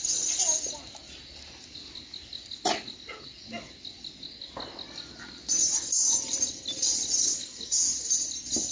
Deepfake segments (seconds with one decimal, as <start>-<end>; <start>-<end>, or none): none